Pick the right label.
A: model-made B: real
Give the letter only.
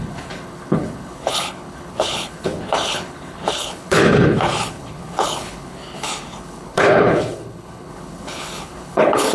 A